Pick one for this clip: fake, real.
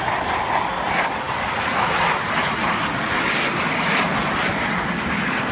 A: real